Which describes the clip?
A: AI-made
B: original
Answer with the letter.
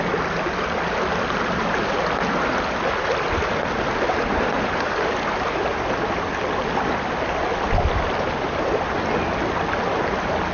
B